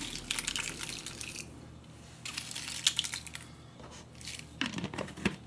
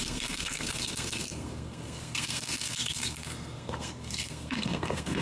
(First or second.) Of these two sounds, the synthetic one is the second